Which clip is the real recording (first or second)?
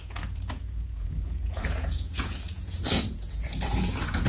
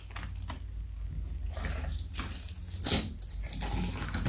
second